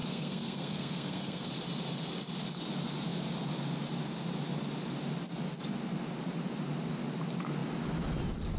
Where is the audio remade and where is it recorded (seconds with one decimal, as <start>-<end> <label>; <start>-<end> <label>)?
0.0-1.5 remade; 1.5-8.6 recorded